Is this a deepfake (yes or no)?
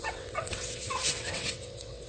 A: yes